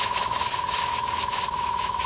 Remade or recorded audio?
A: remade